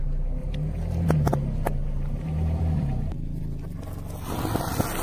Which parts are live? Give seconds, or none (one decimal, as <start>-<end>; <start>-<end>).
0.0-0.4; 3.4-5.0